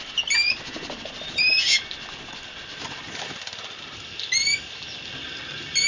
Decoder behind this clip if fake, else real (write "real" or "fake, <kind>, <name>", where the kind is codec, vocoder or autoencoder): real